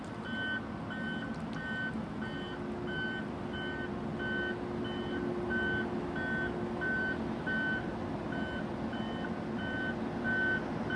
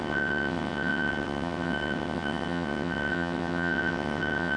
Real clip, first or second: first